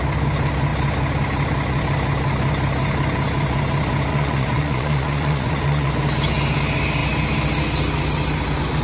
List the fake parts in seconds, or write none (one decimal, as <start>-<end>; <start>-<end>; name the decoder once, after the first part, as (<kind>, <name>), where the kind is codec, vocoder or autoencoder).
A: 4.1-5.9 (vocoder, Vocos)